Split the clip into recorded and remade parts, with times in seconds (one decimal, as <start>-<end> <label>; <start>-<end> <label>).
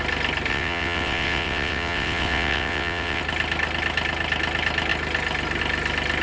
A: 0.0-0.5 recorded; 0.5-3.2 remade; 3.2-6.2 recorded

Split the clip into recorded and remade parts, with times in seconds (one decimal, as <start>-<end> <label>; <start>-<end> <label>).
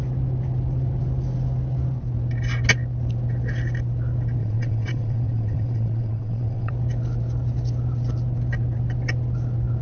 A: 0.0-4.4 recorded; 4.4-6.7 remade; 6.7-9.8 recorded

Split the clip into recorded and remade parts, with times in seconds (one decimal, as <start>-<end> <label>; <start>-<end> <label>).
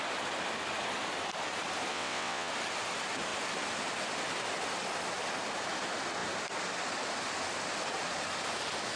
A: 0.0-1.9 recorded; 1.9-2.5 remade; 2.5-9.0 recorded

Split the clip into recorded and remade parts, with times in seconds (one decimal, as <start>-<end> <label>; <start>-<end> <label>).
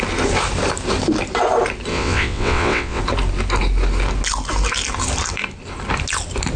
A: 0.0-1.9 recorded; 1.9-3.0 remade; 3.0-6.6 recorded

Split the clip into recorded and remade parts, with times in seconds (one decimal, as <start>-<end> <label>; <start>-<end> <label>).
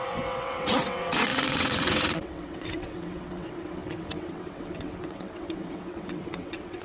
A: 0.0-6.8 remade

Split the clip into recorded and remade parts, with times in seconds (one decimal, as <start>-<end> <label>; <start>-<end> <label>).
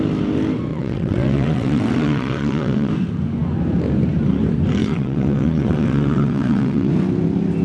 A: 0.0-0.7 recorded; 0.7-2.9 remade; 2.9-4.8 recorded; 4.8-6.9 remade; 6.9-7.6 recorded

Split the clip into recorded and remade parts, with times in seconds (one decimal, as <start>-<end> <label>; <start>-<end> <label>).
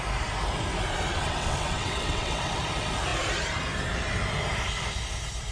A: 0.0-1.1 recorded; 1.1-2.6 remade; 2.6-5.5 recorded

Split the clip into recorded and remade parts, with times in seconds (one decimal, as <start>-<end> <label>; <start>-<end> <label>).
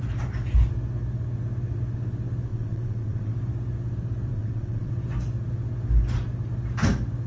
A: 0.0-2.5 recorded; 2.5-3.3 remade; 3.3-4.3 recorded; 4.3-4.9 remade; 4.9-7.3 recorded